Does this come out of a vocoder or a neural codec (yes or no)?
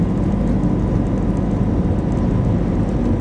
no